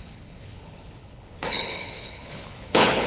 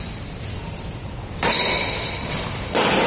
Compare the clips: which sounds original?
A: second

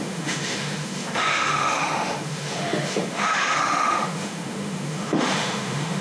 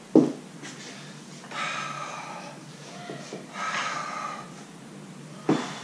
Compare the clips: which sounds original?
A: second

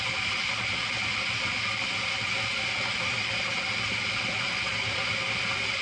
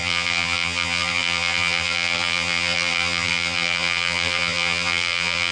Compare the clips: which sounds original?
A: first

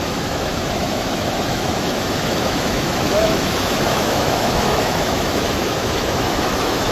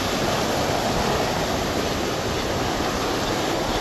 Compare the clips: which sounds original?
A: second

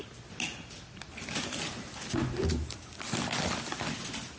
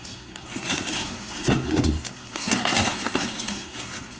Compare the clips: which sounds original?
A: first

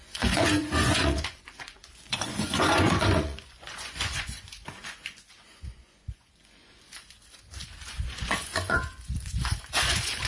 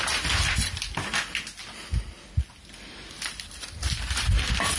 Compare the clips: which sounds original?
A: second